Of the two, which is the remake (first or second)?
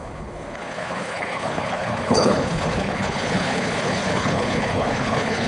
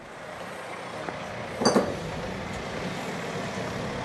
first